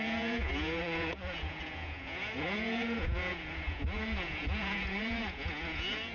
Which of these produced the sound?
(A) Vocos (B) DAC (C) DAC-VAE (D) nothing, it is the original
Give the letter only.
A